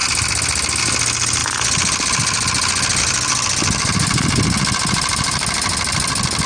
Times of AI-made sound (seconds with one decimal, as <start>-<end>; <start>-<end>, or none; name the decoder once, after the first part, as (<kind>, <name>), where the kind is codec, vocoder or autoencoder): none